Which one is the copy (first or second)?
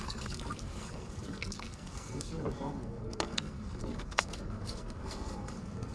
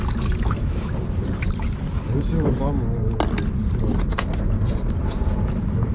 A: first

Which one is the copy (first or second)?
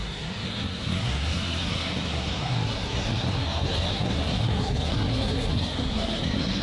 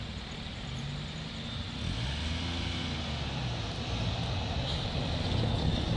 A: first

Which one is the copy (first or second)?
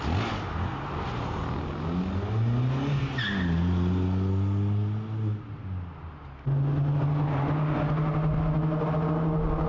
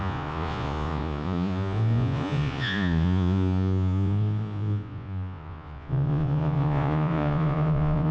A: second